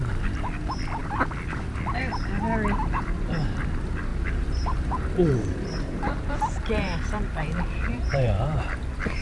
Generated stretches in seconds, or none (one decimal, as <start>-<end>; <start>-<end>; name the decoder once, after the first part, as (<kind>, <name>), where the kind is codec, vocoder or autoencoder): 4.1-8.6 (vocoder, BigVGAN v2)